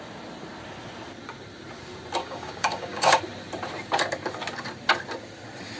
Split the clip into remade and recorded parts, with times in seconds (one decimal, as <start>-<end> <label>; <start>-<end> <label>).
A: 0.0-2.2 recorded; 2.2-3.2 remade; 3.2-5.8 recorded